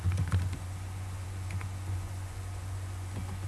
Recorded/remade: remade